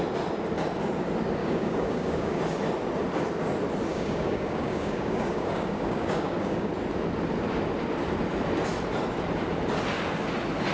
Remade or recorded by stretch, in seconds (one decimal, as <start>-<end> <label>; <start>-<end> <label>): 0.0-1.4 recorded; 1.4-2.4 remade; 2.4-3.9 recorded; 3.9-6.7 remade; 6.7-10.7 recorded